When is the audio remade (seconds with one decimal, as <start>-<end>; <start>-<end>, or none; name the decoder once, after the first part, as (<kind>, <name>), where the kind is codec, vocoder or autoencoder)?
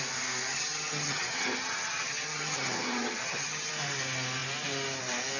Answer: 0.5-3.7 (vocoder, HiFi-GAN)